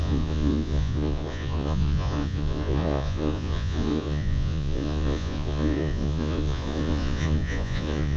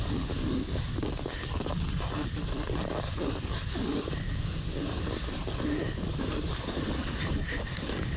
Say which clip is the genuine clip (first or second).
second